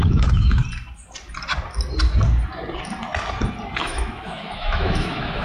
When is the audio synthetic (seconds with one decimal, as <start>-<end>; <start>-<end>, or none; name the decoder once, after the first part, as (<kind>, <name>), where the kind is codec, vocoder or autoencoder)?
0.0-0.6 (autoencoder, DAC-VAE); 3.8-5.4